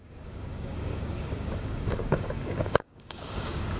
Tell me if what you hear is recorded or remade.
remade